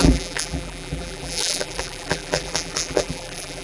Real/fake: fake